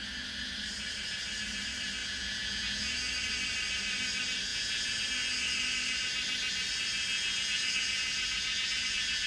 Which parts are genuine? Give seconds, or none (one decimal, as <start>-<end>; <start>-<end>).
0.0-2.0; 3.1-4.5; 5.0-7.1